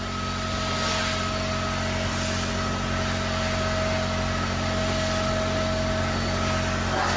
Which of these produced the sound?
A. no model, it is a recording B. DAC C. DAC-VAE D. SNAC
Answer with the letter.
A